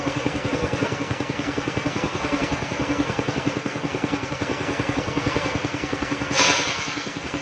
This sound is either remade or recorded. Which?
remade